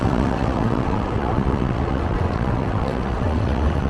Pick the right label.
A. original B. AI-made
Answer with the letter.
B